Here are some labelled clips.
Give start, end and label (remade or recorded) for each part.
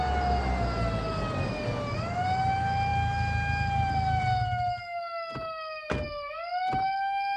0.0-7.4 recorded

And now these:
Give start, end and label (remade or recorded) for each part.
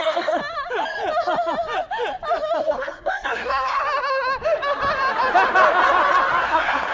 0.0-0.4 remade; 0.4-2.6 recorded; 2.6-3.8 remade; 3.8-6.4 recorded; 6.4-6.9 remade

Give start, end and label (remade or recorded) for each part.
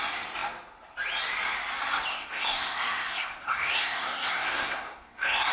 0.0-2.1 recorded; 2.1-5.5 remade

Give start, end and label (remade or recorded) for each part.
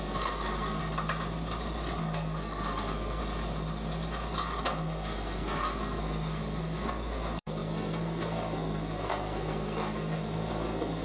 0.0-0.8 remade; 0.8-2.0 recorded; 2.0-3.2 remade; 3.2-4.6 recorded; 4.6-11.0 remade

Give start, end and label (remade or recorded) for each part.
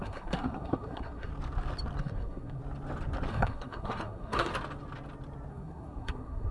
0.0-1.3 remade; 1.3-2.0 recorded; 2.0-2.6 remade; 2.6-3.3 recorded; 3.3-4.5 remade; 4.5-5.5 recorded; 5.5-6.5 remade